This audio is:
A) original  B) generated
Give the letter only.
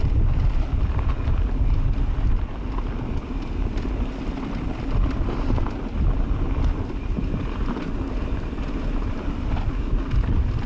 A